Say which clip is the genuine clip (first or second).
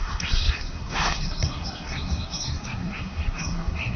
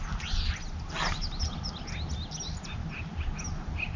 second